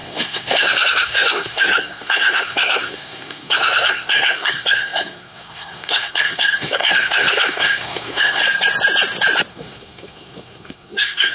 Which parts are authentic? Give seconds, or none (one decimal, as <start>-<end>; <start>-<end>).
8.4-9.5